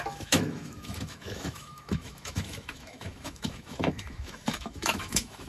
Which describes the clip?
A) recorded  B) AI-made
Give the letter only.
B